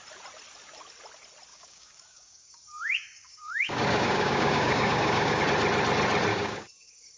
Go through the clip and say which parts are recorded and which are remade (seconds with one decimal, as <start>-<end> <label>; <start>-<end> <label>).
0.0-1.5 recorded; 1.5-5.4 remade; 5.4-6.3 recorded; 6.3-7.2 remade